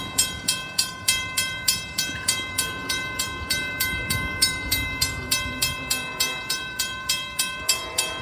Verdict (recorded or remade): remade